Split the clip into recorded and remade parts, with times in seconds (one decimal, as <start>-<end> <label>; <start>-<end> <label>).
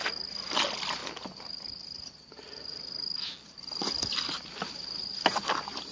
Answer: 0.0-5.9 recorded